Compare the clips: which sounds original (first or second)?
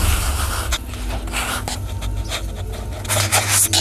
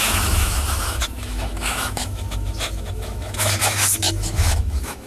first